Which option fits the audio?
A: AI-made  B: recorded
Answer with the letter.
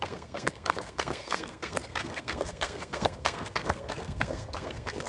A